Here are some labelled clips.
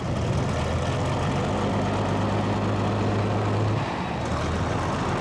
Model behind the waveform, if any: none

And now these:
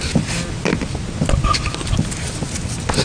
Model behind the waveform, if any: none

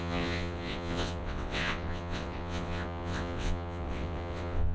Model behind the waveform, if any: vocoder, WaveNeXt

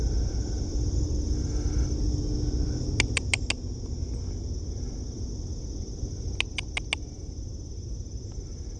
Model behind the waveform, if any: none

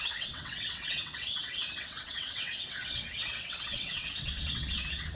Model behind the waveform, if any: vocoder, WaveNeXt